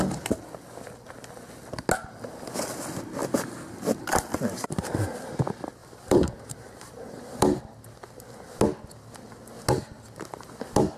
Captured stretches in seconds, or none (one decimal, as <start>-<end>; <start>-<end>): 0.0-3.2; 5.2-5.8; 7.6-11.0